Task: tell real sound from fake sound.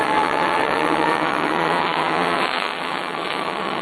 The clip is fake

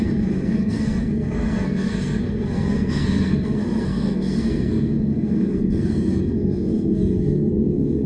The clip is fake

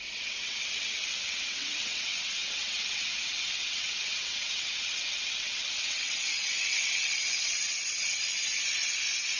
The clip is fake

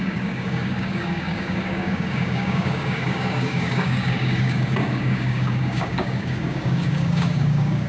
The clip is fake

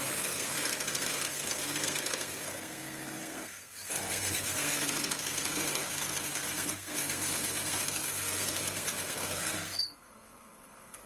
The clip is fake